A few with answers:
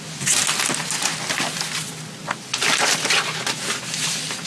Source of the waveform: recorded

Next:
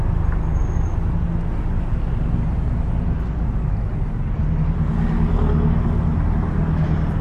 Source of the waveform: recorded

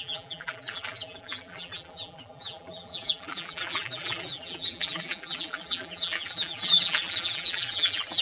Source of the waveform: remade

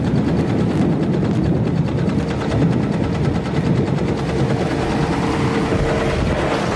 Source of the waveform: recorded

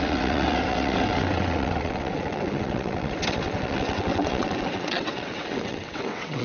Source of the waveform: remade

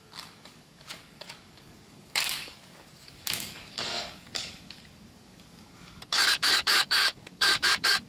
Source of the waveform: remade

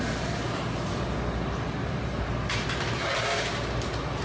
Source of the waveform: recorded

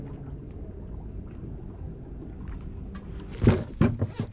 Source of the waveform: recorded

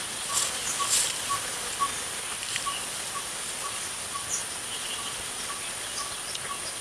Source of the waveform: recorded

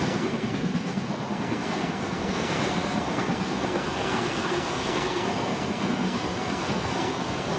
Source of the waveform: remade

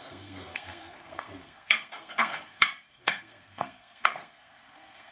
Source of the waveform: remade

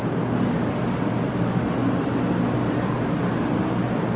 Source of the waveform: recorded